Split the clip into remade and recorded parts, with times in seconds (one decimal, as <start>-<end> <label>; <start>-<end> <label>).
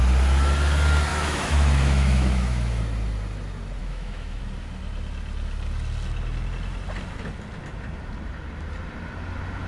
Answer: 0.0-1.1 recorded; 1.1-2.8 remade; 2.8-3.8 recorded; 3.8-4.4 remade; 4.4-9.7 recorded